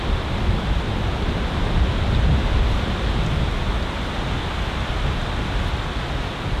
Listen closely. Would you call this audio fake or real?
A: real